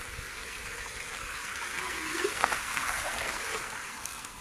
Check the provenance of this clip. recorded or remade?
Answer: remade